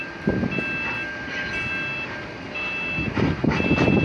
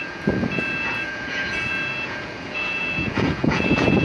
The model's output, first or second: second